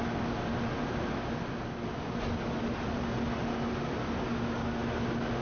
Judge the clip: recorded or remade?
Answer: recorded